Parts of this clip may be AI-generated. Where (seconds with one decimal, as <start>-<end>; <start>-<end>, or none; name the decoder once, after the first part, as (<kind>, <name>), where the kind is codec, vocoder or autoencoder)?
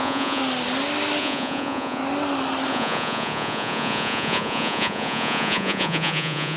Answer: 0.0-0.4 (vocoder, Vocos); 1.2-2.0; 2.7-6.6